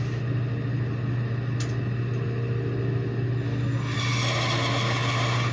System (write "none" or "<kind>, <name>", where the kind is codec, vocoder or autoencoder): none